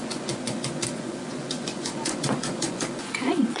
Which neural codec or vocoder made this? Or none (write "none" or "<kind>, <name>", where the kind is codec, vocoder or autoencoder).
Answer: vocoder, Vocos